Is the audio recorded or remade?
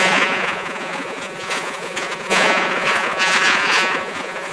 remade